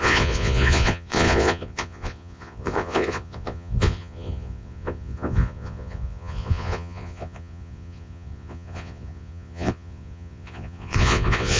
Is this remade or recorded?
remade